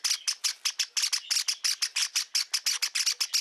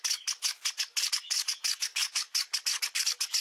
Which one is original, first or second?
first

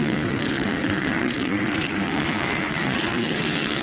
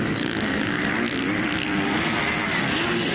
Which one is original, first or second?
second